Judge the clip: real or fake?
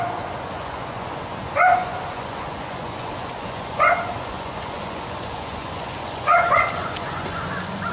fake